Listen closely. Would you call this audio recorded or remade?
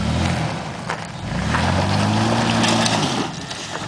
recorded